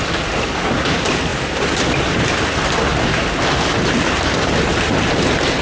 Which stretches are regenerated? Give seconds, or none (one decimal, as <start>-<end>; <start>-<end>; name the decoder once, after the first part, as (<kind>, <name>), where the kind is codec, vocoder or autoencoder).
0.0-2.9 (vocoder, BigVGAN v2)